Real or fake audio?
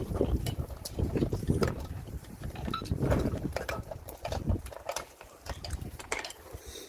fake